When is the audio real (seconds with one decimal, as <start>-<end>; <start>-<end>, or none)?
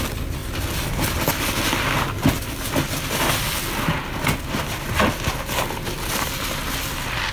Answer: 0.4-4.4